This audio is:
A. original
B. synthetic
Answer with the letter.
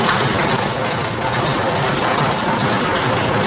A